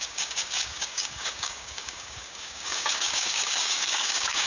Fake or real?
fake